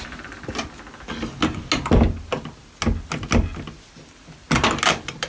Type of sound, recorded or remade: recorded